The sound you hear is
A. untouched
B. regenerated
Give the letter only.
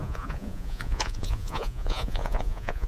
B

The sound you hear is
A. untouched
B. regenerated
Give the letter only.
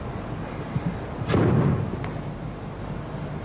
A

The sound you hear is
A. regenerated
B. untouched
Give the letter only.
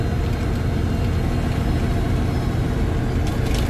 B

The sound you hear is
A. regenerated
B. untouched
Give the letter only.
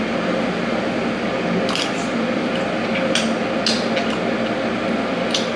B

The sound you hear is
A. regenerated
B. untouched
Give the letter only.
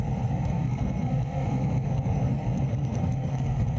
A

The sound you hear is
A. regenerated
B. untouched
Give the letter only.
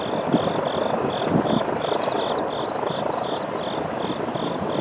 B